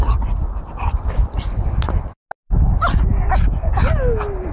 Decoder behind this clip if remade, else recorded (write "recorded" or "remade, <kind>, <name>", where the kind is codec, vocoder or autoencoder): recorded